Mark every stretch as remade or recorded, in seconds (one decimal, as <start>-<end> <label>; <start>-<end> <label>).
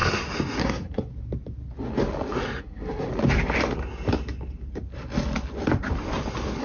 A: 0.0-0.6 recorded; 0.6-1.1 remade; 1.1-2.6 recorded; 2.6-3.1 remade; 3.1-6.6 recorded